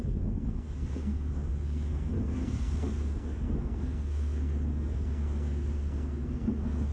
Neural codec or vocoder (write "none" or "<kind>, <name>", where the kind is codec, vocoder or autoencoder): codec, SNAC